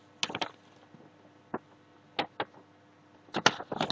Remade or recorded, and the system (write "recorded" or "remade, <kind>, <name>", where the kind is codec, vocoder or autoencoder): recorded